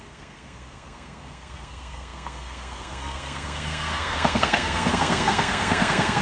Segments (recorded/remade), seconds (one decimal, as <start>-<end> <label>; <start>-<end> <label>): 0.0-6.2 remade